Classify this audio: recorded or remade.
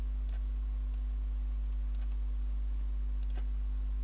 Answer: recorded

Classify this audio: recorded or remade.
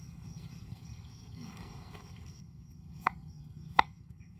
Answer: remade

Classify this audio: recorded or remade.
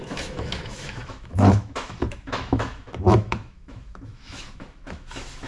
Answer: remade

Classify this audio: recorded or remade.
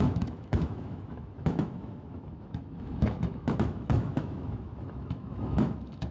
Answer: remade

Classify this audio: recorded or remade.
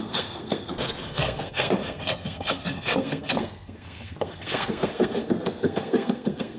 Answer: remade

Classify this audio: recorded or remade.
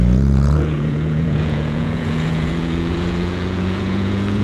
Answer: remade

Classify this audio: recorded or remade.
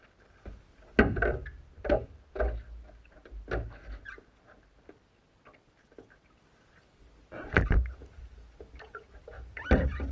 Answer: recorded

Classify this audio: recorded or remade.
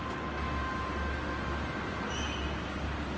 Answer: recorded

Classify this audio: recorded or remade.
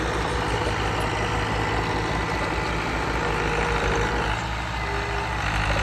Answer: recorded